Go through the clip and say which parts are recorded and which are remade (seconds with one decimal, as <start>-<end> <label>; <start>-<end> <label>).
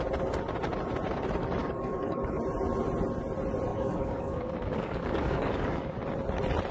0.0-1.6 recorded; 1.6-2.4 remade; 2.4-3.7 recorded; 3.7-6.0 remade; 6.0-6.7 recorded